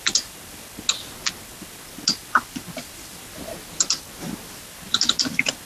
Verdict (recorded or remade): recorded